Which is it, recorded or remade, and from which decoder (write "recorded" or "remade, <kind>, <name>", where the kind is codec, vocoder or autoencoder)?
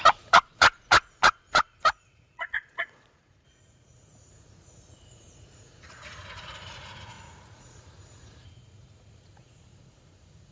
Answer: remade, vocoder, Vocos